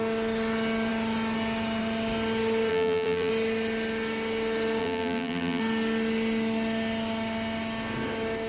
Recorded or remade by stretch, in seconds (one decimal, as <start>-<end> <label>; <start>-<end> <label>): 0.0-2.7 recorded; 2.7-3.3 remade; 3.3-4.8 recorded; 4.8-5.6 remade; 5.6-8.5 recorded